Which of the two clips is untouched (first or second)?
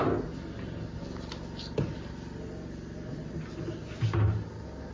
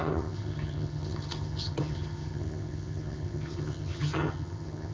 first